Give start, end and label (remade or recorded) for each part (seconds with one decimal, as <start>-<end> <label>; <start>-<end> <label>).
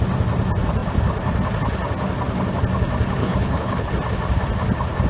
0.0-3.2 recorded; 3.2-3.9 remade; 3.9-5.1 recorded